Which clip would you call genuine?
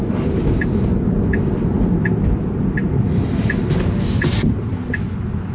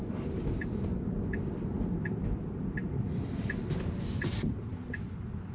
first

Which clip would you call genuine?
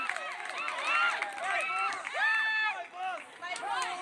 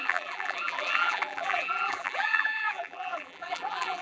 first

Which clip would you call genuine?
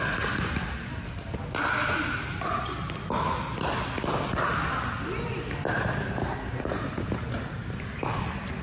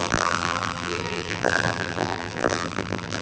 first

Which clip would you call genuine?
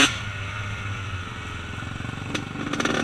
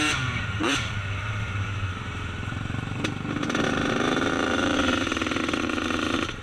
first